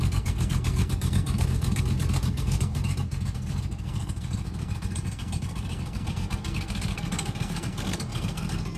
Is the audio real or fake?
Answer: fake